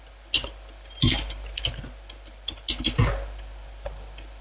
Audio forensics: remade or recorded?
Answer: recorded